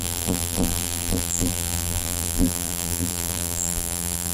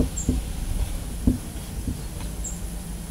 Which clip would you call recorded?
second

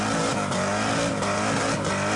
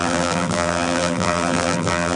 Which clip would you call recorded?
first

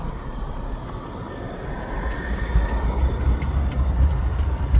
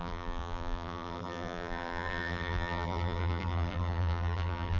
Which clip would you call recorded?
first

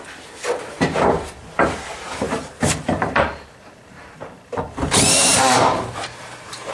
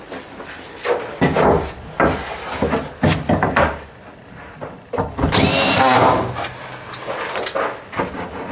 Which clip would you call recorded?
second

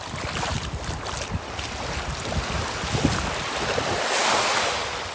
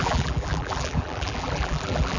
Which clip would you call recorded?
first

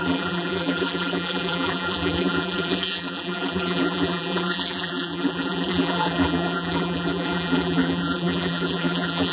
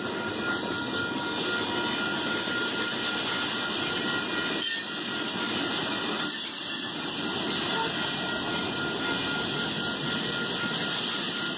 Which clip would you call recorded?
second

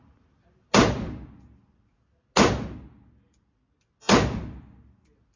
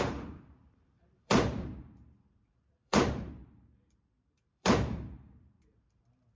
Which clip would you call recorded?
first